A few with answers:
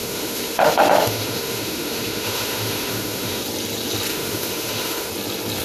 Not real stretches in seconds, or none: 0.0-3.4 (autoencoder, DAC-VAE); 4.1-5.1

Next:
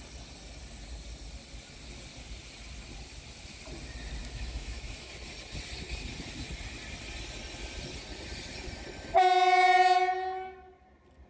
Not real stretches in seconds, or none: 4.2-5.1 (autoencoder, DAC-VAE)